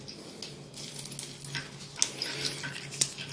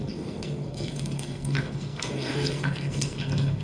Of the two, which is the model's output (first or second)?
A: second